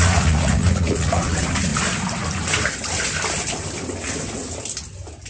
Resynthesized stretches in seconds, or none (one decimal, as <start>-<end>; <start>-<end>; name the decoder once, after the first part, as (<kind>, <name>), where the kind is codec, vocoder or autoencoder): 0.0-1.7 (vocoder, Vocos)